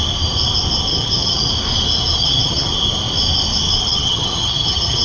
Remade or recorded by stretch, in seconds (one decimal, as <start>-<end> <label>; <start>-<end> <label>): 0.0-0.9 recorded; 0.9-1.5 remade; 1.5-2.2 recorded; 2.2-2.7 remade; 2.7-3.9 recorded; 3.9-5.0 remade

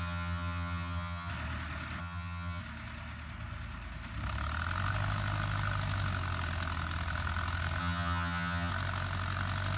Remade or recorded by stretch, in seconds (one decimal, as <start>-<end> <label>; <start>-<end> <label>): 0.0-1.3 remade; 1.3-2.0 recorded; 2.0-2.6 remade; 2.6-7.8 recorded; 7.8-8.7 remade; 8.7-9.8 recorded

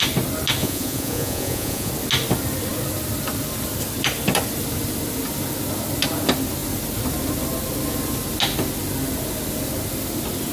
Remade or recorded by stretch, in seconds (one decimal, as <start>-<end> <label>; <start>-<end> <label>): 0.0-0.6 recorded; 0.6-1.9 remade; 1.9-10.5 recorded

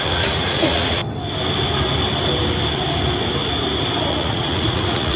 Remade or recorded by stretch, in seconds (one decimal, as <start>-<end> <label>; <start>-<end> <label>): 0.0-1.0 remade; 1.0-4.1 recorded; 4.1-5.2 remade

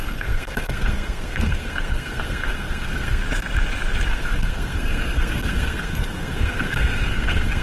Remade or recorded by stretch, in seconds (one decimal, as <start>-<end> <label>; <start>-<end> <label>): 0.0-3.2 remade; 3.2-4.1 recorded; 4.1-7.6 remade

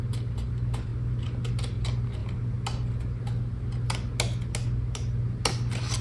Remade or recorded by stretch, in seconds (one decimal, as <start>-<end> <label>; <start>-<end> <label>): 0.0-6.0 recorded

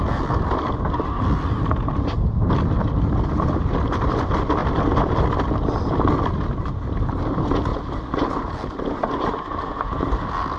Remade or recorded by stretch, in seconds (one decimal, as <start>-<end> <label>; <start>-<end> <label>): 0.0-10.6 recorded